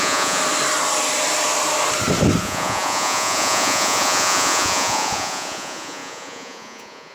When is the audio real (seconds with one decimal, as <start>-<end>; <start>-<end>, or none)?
0.4-2.4